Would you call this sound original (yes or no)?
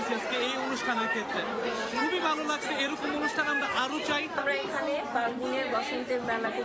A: yes